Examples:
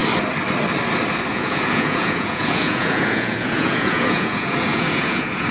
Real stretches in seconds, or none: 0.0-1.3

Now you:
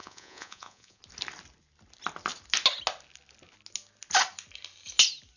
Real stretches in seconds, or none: 1.0-5.4

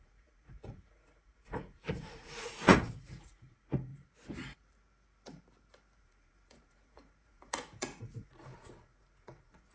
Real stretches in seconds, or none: 3.9-6.0

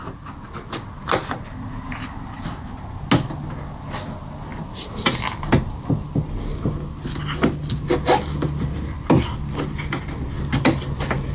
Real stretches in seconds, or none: 0.0-11.3

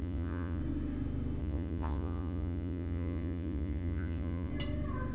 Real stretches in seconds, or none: 0.6-1.4; 4.5-5.1

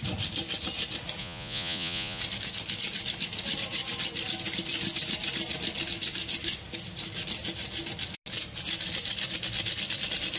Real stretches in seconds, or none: 0.0-1.2; 2.2-10.4

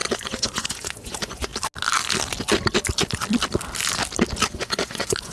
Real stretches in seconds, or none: 1.5-4.5

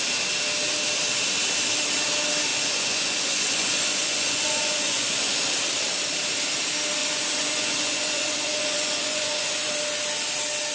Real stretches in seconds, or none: 0.0-2.5; 5.4-7.0; 9.7-10.7